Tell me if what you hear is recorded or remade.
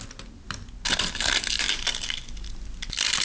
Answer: recorded